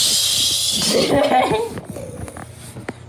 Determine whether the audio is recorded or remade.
recorded